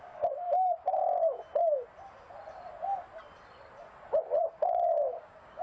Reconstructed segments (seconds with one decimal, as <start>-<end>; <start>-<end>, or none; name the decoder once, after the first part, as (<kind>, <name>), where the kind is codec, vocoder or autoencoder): 0.0-1.0 (codec, DAC); 4.4-5.6